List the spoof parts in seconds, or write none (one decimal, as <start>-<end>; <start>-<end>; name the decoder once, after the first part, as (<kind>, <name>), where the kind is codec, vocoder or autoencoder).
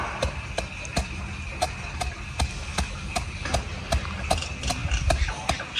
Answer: none